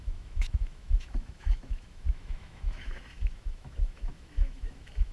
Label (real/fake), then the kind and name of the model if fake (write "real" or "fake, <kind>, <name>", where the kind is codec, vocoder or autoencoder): fake, autoencoder, DAC-VAE